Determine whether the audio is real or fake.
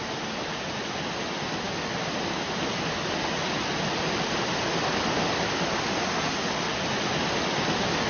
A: real